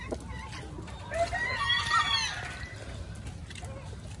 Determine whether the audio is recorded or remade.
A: recorded